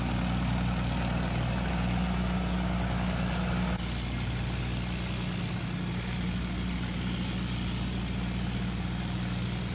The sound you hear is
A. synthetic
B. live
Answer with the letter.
B